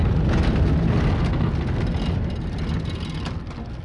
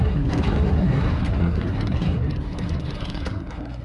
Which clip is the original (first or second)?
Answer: first